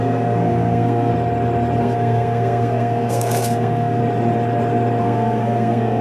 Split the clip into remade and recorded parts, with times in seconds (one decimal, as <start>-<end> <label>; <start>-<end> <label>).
0.0-1.1 remade; 1.1-1.8 recorded; 1.8-4.0 remade; 4.0-5.0 recorded; 5.0-6.0 remade